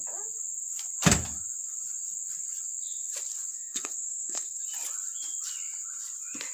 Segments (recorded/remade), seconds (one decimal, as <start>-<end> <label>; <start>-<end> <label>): 0.0-3.5 recorded; 3.5-4.6 remade; 4.6-6.5 recorded